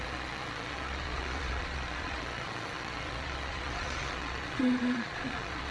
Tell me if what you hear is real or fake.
fake